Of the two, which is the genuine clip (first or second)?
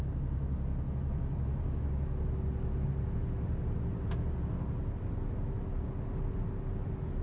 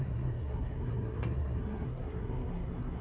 first